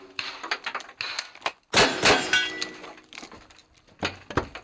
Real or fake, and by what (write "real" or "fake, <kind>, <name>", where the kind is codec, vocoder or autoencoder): real